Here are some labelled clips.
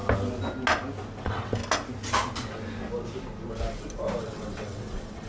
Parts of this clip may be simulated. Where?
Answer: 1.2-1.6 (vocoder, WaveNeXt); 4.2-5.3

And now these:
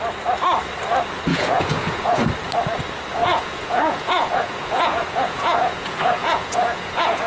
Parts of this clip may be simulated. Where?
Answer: 1.3-2.2 (vocoder, Vocos); 3.2-7.3

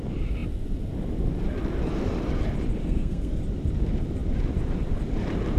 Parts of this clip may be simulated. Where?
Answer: 2.8-3.4 (codec, SNAC)